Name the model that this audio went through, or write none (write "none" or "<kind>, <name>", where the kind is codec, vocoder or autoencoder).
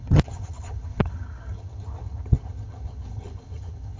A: vocoder, HiFi-GAN